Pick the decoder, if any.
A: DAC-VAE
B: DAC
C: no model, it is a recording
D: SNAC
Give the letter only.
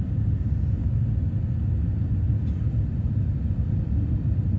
C